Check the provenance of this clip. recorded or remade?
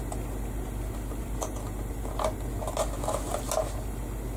recorded